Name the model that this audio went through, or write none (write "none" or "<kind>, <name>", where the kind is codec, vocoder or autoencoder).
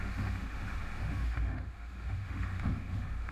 autoencoder, DAC-VAE